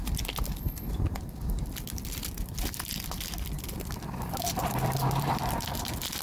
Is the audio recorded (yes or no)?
yes